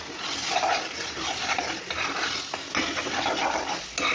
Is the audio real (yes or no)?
yes